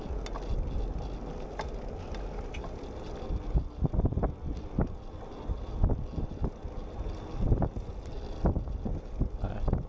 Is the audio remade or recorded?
recorded